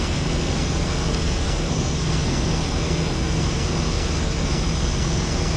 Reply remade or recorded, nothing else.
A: remade